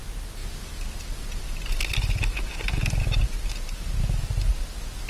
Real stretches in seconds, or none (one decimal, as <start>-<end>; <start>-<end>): 0.0-5.1